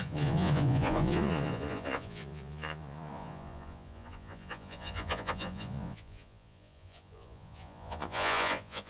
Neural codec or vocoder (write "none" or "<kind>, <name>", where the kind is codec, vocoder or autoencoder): vocoder, Vocos